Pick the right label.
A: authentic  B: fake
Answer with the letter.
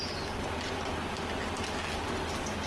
A